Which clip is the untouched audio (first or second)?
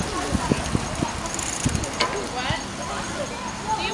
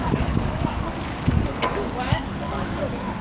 first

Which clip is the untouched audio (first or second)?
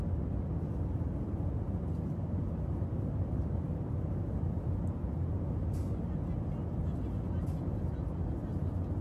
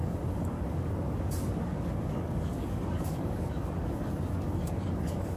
first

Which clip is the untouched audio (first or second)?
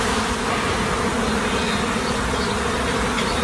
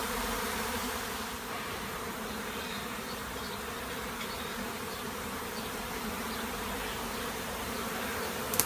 first